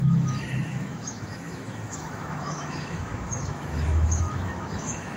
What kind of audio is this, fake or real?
fake